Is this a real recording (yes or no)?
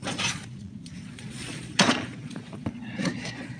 no